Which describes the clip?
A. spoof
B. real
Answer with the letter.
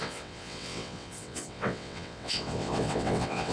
A